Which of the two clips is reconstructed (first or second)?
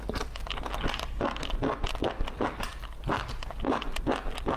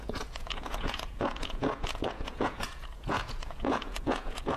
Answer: second